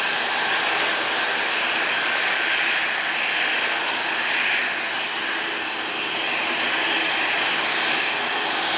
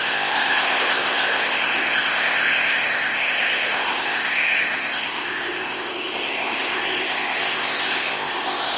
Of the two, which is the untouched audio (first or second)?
first